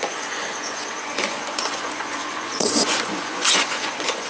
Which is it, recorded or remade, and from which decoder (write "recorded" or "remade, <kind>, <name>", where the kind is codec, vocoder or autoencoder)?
remade, vocoder, Vocos